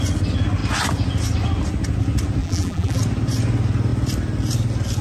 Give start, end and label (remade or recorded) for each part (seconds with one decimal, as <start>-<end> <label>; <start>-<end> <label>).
0.0-2.4 recorded; 2.4-3.0 remade; 3.0-5.0 recorded